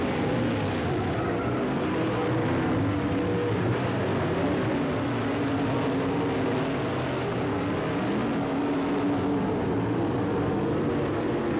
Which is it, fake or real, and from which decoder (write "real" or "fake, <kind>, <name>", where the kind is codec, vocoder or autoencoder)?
real